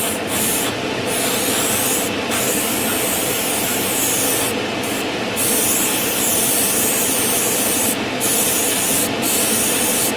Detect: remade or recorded recorded